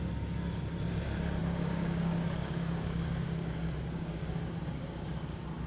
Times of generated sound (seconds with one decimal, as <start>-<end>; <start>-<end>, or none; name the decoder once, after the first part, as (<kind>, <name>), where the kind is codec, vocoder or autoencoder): 1.4-4.5 (codec, DAC)